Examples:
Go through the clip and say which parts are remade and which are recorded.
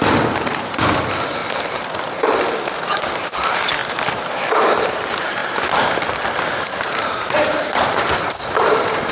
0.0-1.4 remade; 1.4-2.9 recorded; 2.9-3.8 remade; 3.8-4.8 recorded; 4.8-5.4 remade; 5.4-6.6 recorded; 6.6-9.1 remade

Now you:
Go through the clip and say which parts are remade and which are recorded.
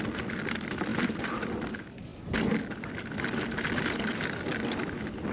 0.0-0.9 recorded; 0.9-1.4 remade; 1.4-5.3 recorded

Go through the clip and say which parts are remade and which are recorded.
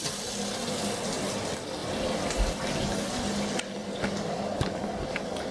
0.0-1.8 recorded; 1.8-2.3 remade; 2.3-5.5 recorded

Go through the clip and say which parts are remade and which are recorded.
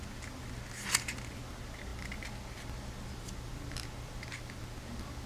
0.0-5.3 recorded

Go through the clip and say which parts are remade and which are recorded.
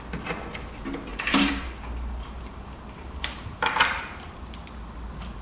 0.0-1.1 recorded; 1.1-4.3 remade; 4.3-5.4 recorded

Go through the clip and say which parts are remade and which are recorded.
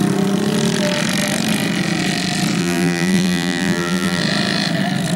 0.0-2.6 recorded; 2.6-4.2 remade; 4.2-5.2 recorded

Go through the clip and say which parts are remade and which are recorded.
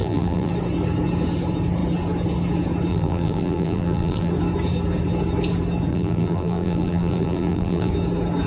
0.0-0.5 remade; 0.5-2.9 recorded; 2.9-4.3 remade; 4.3-5.9 recorded; 5.9-7.9 remade; 7.9-8.5 recorded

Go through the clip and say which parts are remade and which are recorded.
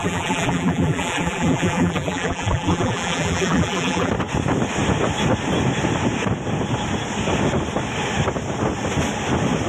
0.0-4.1 remade; 4.1-9.7 recorded